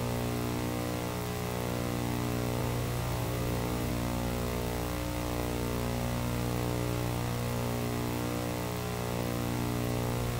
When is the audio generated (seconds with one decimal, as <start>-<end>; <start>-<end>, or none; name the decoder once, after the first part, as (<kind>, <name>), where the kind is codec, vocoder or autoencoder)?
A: 2.6-3.9 (vocoder, BigVGAN v2)